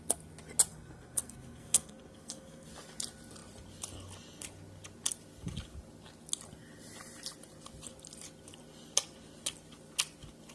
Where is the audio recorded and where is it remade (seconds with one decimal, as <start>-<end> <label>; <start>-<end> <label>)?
0.0-0.7 recorded; 0.7-2.7 remade; 2.7-10.5 recorded